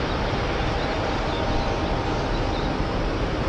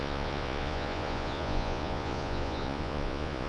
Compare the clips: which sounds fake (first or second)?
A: second